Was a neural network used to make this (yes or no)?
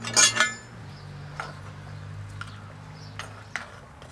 no